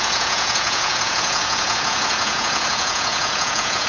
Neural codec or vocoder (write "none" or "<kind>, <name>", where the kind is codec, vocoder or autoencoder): vocoder, Vocos